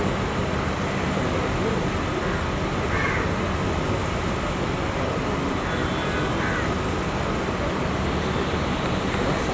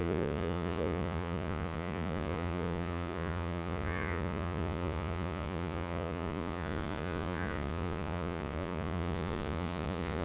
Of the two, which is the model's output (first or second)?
second